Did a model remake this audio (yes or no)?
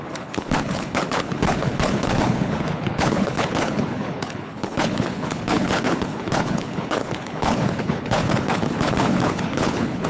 yes